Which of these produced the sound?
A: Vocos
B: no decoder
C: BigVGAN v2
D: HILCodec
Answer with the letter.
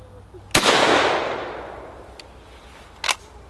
B